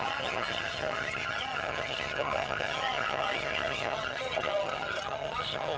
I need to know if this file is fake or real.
fake